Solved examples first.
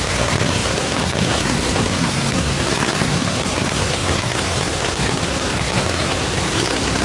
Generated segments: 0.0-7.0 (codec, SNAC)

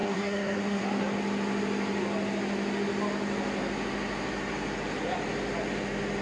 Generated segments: 0.0-0.8 (codec, SNAC)

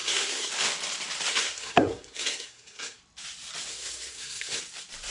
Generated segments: 0.0-0.5 (codec, SNAC); 1.3-3.0; 3.7-4.6

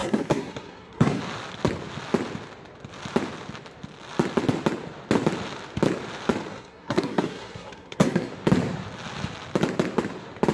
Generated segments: 0.0-1.2 (codec, SNAC); 6.5-8.3

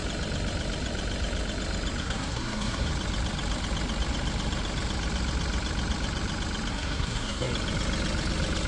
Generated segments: 2.0-2.9 (codec, SNAC); 6.7-7.5

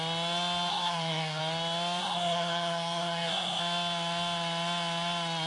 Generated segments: 0.7-1.4 (codec, SNAC); 2.0-3.6